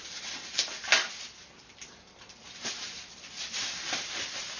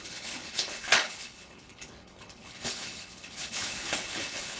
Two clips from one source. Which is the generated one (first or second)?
second